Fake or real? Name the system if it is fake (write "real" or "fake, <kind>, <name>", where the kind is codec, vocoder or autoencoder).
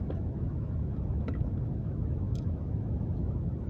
fake, autoencoder, DAC-VAE